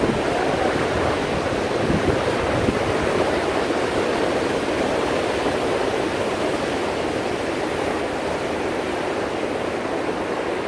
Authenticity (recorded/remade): recorded